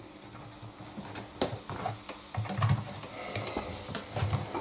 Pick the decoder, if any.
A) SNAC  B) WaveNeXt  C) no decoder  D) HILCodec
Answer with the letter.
C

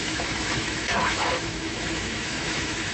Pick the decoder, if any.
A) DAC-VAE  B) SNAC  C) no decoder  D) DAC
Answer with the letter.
A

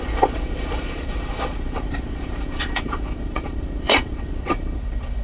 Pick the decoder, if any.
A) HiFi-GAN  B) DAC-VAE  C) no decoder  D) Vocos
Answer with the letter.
D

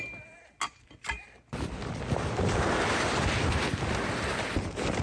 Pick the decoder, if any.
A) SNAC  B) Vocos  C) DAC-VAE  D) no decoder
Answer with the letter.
D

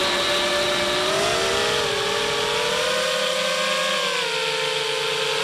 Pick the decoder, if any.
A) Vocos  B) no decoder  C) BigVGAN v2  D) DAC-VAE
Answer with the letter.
B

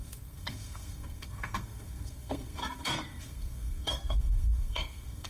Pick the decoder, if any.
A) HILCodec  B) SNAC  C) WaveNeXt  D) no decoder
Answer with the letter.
B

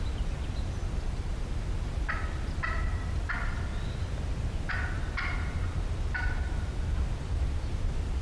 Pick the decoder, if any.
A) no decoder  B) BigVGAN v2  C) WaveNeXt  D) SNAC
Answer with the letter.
A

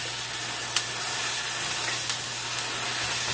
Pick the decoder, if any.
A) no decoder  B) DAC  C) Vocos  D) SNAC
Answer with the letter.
A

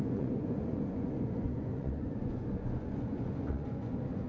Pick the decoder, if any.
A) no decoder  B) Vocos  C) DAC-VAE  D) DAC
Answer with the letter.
B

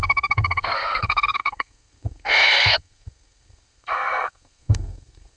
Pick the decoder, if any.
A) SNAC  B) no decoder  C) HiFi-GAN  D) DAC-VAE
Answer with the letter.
A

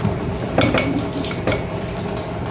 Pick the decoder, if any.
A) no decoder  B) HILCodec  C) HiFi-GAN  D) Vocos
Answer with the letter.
A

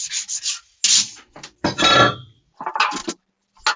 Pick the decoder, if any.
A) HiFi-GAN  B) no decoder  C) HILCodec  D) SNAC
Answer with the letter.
B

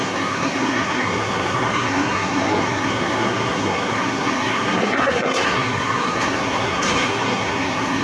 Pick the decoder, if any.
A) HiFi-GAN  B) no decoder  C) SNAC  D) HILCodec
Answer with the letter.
C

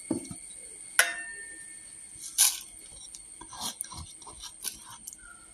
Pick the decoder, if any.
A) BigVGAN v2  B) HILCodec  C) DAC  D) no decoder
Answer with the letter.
D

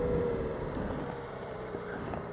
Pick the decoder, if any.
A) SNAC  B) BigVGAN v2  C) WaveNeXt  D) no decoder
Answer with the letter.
B